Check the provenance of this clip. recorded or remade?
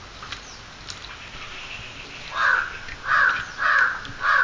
recorded